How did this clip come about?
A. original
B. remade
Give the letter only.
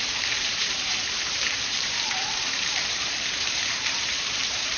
B